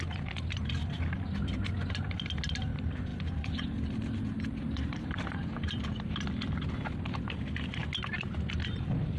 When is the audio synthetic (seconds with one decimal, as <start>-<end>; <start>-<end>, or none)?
3.1-6.1